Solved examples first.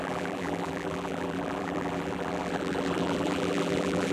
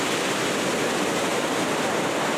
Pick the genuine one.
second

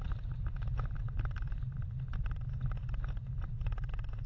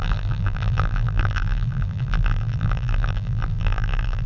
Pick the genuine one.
first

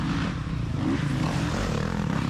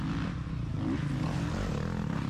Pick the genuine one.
second